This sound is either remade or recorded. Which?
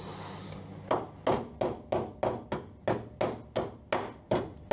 recorded